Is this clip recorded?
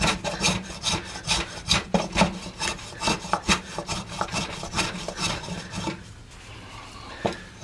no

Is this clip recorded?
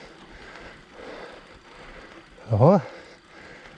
yes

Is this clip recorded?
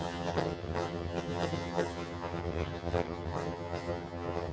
no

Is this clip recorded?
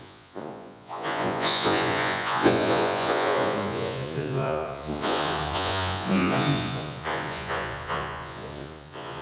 no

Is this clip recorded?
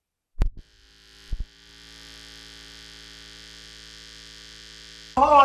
yes